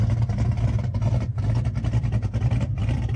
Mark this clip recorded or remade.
remade